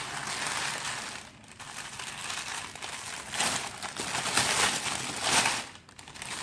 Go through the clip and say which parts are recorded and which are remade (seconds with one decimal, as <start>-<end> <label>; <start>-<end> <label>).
0.0-6.4 recorded